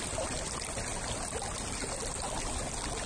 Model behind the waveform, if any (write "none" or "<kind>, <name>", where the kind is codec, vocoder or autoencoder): none